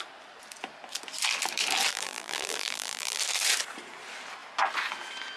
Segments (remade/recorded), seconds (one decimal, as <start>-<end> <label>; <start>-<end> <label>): 0.0-1.9 recorded; 1.9-3.2 remade; 3.2-5.4 recorded